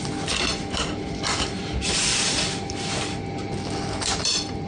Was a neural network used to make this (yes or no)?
no